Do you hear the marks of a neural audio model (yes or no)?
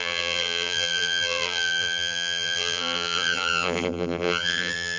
yes